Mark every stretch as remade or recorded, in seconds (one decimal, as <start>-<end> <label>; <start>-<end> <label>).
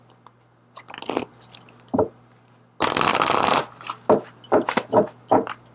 0.0-5.7 recorded